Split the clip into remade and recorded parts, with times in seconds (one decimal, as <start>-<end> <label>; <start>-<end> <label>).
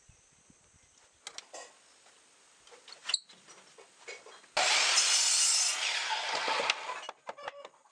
0.0-7.9 recorded